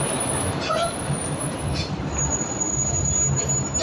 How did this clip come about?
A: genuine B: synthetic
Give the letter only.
A